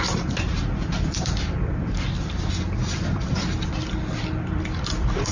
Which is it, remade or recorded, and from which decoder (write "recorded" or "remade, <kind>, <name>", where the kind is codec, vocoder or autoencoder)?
remade, vocoder, BigVGAN v2